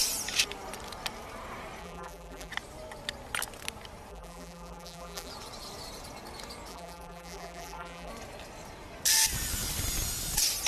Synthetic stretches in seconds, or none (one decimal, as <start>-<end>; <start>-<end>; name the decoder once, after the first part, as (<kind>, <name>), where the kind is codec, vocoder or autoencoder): 1.8-2.5 (vocoder, BigVGAN v2); 4.1-5.3; 6.7-8.1